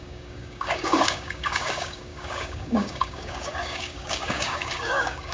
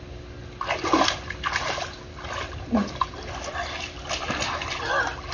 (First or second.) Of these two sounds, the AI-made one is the first